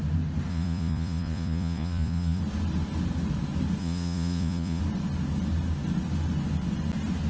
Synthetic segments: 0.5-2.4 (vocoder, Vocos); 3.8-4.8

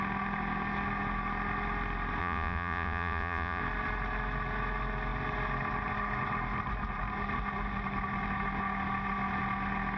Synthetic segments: 2.2-3.6 (vocoder, Vocos)

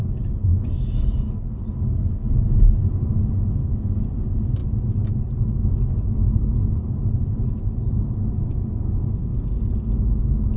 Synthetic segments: 9.3-9.9 (vocoder, Vocos)

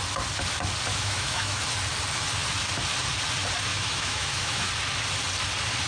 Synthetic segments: 0.9-1.6 (autoencoder, DAC-VAE); 3.7-4.7

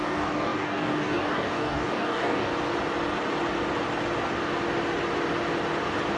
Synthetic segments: 0.0-2.5 (codec, DAC)

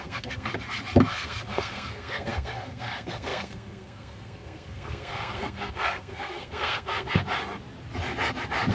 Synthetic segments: 0.0-0.5 (codec, SNAC); 1.1-7.2